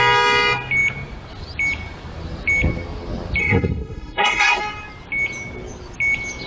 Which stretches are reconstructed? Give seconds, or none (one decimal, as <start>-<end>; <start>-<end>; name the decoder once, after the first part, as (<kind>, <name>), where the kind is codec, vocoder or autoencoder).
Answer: 3.4-4.6 (codec, SNAC)

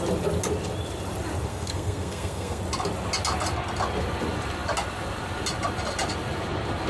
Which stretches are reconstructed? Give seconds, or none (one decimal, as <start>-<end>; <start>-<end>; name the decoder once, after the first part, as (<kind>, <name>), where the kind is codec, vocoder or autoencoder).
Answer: 1.5-2.6 (codec, SNAC)

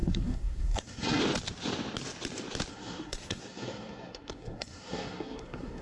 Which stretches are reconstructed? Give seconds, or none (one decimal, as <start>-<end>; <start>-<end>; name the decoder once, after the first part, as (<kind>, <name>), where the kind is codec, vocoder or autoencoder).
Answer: 0.0-1.2 (codec, SNAC); 2.7-5.8

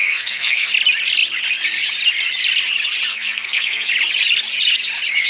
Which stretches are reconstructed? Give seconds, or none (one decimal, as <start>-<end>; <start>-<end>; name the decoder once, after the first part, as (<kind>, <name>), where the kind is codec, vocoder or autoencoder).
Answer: 0.0-0.7 (codec, SNAC); 3.1-3.9

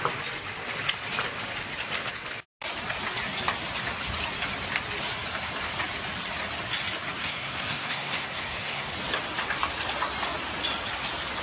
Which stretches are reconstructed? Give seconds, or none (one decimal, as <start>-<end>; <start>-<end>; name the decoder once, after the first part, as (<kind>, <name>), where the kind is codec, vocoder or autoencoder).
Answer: 7.2-8.9 (codec, SNAC)

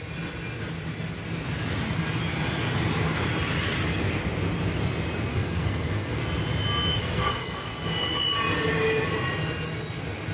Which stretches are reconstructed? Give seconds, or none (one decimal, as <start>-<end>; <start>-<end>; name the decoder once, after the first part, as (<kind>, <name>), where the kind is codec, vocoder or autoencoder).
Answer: 5.3-6.2 (codec, SNAC); 7.0-7.7

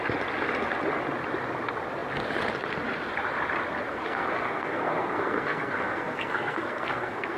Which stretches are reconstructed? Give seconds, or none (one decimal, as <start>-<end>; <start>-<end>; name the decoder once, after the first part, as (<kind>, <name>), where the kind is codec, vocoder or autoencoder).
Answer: 3.9-7.4 (codec, SNAC)